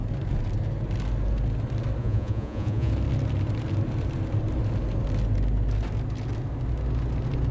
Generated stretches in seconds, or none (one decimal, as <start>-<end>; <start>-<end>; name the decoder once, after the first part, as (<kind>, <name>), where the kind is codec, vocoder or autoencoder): 2.0-2.9 (vocoder, Vocos)